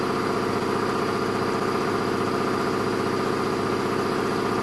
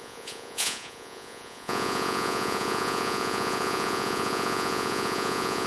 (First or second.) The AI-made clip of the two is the second